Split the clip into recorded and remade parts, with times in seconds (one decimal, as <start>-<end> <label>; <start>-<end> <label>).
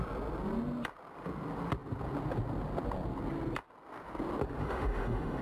0.0-4.6 recorded; 4.6-5.4 remade